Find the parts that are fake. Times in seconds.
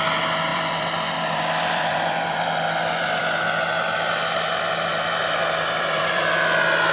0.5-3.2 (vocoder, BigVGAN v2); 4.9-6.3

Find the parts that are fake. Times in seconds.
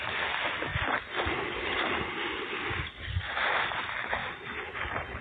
4.2-5.2 (vocoder, BigVGAN v2)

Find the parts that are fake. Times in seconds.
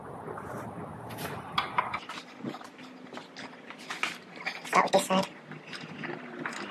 0.0-1.8 (vocoder, BigVGAN v2)